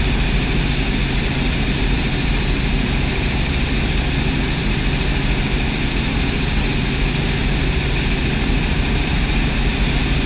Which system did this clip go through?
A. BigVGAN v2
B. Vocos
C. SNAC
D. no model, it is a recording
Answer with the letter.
D